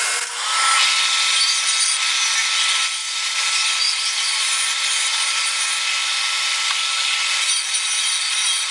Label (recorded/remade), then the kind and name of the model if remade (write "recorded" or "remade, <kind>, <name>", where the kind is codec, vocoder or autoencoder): recorded